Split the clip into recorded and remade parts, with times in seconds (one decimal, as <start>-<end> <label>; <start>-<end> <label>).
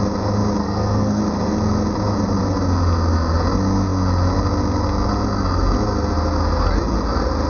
0.0-0.6 recorded; 0.6-1.2 remade; 1.2-7.5 recorded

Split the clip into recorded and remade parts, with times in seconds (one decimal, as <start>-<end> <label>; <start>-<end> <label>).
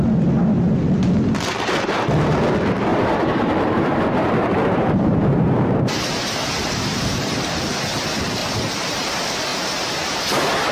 0.0-2.9 recorded; 2.9-7.6 remade; 7.6-8.4 recorded; 8.4-9.1 remade; 9.1-9.5 recorded; 9.5-10.7 remade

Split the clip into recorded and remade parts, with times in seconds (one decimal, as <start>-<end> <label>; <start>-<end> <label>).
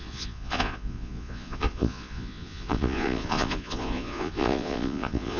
0.0-5.4 remade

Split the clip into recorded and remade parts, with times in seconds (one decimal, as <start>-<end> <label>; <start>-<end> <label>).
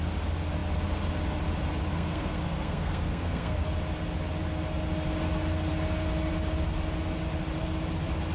0.0-1.9 recorded; 1.9-3.6 remade; 3.6-8.3 recorded